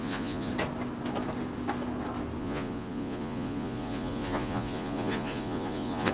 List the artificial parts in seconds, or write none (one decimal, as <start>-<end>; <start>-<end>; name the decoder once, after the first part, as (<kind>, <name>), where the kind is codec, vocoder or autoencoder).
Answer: 0.0-0.5 (vocoder, Vocos); 2.4-6.1